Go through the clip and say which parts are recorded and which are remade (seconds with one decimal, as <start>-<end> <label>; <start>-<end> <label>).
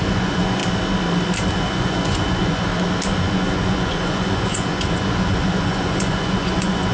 0.0-0.6 remade; 0.6-1.5 recorded; 1.5-2.7 remade; 2.7-3.2 recorded; 3.2-6.9 remade